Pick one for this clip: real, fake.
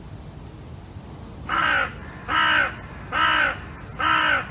real